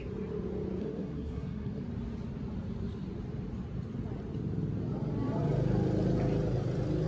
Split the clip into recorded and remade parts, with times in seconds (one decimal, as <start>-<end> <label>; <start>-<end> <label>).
0.0-0.8 recorded; 0.8-1.8 remade; 1.8-7.1 recorded